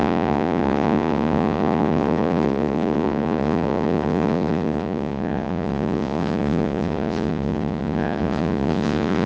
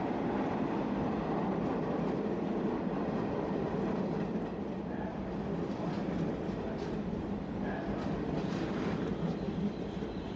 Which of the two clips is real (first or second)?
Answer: second